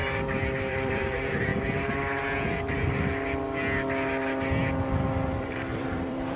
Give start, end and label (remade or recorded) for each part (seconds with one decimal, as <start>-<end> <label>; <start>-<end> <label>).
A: 0.0-0.7 recorded; 0.7-1.5 remade; 1.5-5.3 recorded; 5.3-6.4 remade